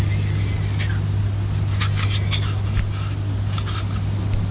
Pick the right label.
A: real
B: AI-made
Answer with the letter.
A